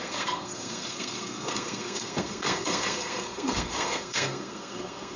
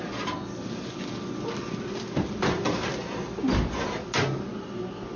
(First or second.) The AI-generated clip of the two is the first